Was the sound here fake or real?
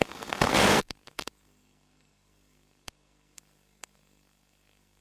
fake